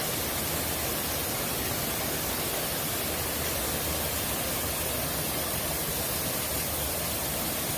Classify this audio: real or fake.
real